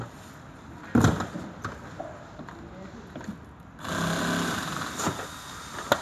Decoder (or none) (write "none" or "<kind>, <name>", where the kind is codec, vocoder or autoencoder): none